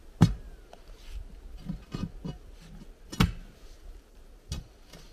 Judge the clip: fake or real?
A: real